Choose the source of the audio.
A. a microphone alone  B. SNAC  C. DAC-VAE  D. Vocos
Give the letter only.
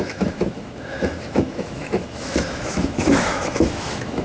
C